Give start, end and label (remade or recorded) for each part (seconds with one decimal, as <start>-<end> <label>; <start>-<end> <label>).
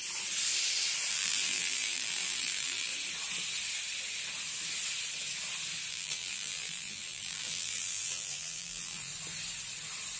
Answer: 0.0-1.1 recorded; 1.1-2.9 remade; 2.9-5.9 recorded; 5.9-9.1 remade; 9.1-10.2 recorded